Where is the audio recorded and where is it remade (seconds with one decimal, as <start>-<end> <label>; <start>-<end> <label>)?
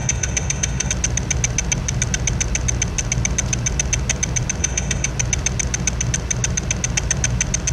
0.0-0.9 remade; 0.9-4.6 recorded; 4.6-5.1 remade; 5.1-7.7 recorded